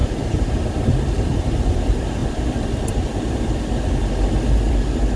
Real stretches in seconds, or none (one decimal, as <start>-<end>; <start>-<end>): 1.8-5.2